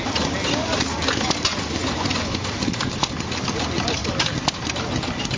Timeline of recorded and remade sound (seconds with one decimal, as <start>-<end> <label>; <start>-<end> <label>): 0.0-1.8 recorded; 1.8-2.5 remade; 2.5-5.4 recorded